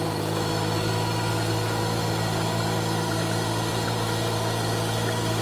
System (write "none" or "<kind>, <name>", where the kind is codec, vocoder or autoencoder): none